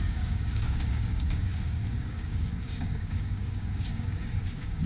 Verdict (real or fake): fake